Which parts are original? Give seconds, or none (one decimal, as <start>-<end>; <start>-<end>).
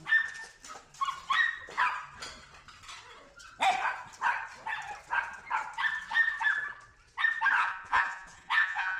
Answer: 0.0-7.6